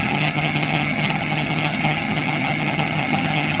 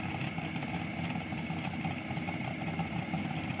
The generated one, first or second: first